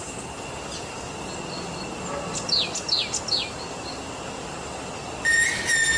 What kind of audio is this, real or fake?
real